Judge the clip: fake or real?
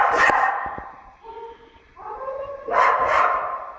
real